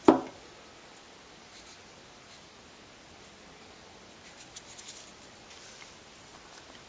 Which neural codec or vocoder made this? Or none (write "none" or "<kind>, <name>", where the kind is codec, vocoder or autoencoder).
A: none